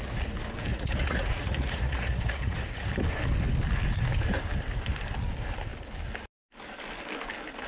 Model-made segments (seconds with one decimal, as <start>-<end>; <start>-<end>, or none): 0.7-2.9